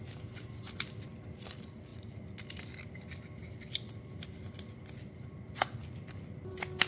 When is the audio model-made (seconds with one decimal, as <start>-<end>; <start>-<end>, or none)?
5.8-6.5